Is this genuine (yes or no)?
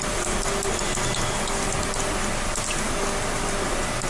yes